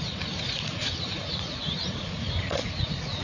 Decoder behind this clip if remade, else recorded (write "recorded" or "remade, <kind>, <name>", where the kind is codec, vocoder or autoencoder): remade, vocoder, Vocos